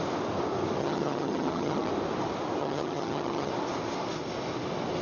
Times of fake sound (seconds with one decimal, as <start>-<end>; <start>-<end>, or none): 0.8-1.9; 2.6-3.5